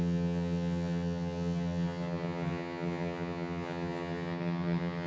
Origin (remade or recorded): remade